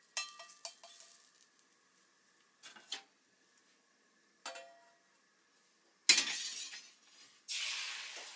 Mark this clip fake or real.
real